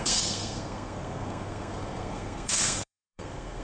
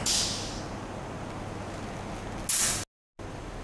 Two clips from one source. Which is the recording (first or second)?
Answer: second